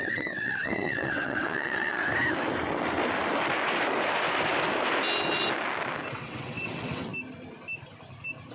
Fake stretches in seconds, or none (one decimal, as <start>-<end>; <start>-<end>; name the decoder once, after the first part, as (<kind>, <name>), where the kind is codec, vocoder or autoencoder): 0.0-2.0 (vocoder, WaveNeXt); 6.1-7.1